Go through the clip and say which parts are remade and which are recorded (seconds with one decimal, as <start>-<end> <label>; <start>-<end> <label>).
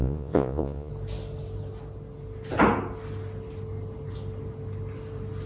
0.0-0.9 remade; 0.9-5.5 recorded